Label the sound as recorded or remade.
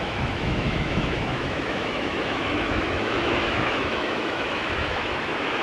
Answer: remade